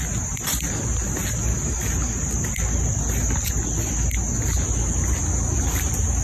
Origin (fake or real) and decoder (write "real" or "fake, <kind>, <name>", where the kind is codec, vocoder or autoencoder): real